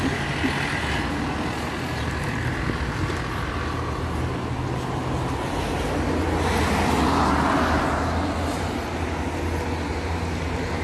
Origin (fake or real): real